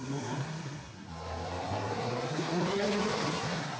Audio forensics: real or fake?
fake